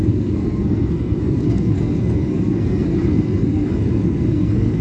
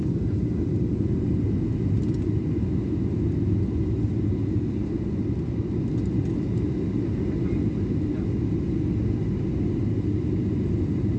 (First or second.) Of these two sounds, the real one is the second